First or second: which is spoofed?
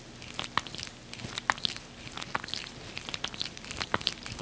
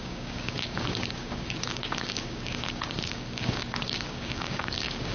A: second